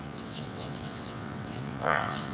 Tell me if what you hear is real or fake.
fake